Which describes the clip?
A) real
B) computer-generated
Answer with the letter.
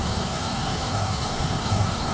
B